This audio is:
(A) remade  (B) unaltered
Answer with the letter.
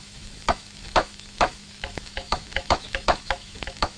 A